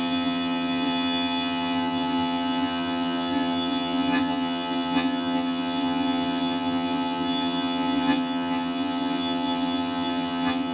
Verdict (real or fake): fake